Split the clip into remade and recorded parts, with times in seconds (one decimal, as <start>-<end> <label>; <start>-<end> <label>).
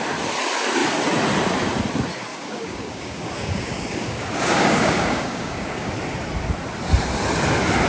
0.0-2.3 recorded; 2.3-5.9 remade; 5.9-7.9 recorded